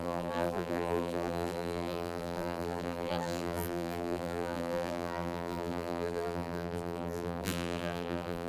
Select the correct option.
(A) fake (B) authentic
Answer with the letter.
A